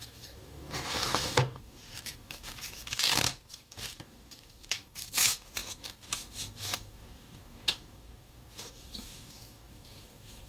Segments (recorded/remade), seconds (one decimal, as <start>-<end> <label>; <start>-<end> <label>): 0.0-10.5 remade